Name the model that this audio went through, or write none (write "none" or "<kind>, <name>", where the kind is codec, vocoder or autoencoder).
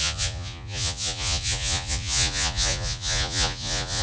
vocoder, Vocos